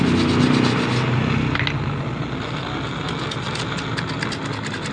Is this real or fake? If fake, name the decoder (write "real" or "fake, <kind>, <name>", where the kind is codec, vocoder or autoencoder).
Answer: real